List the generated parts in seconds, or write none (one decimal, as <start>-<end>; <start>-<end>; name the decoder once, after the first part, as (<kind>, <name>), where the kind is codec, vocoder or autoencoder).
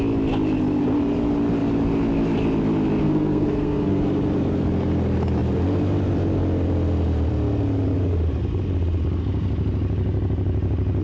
3.0-4.0 (codec, SNAC)